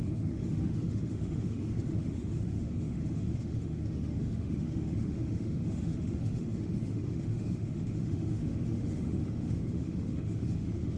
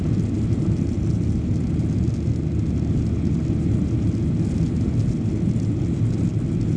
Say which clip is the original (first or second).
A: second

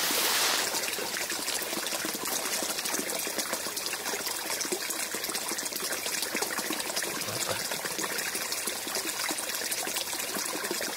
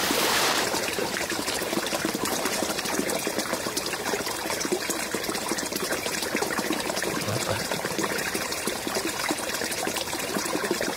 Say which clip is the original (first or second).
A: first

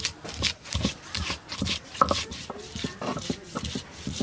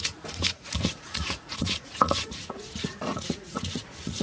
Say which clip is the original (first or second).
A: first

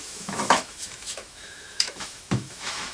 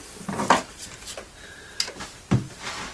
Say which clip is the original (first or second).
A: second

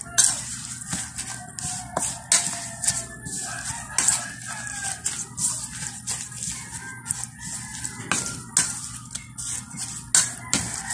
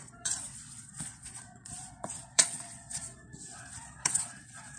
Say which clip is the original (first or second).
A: first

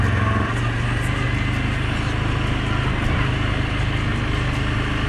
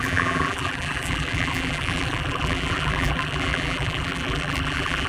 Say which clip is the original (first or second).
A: first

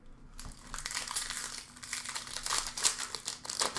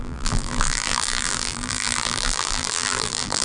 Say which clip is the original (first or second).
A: first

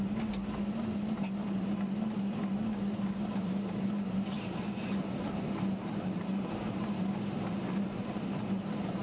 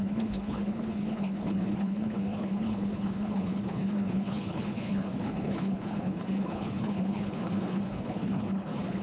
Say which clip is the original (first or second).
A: first